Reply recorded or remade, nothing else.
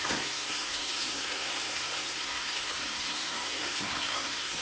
remade